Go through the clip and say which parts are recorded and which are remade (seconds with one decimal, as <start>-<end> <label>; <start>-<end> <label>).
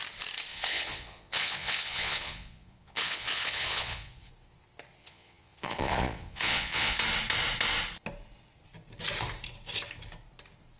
0.0-0.5 recorded; 0.5-4.3 remade; 4.3-5.0 recorded; 5.0-7.0 remade; 7.0-10.8 recorded